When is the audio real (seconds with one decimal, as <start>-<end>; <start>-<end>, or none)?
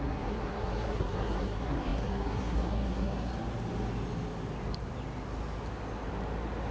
3.3-6.7